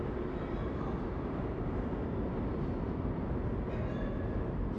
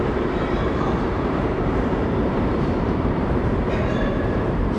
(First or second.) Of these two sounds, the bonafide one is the first